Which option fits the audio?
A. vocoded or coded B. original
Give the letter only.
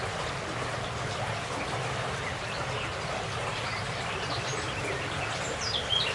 B